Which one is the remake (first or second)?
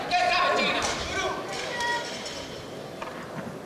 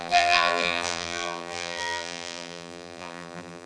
second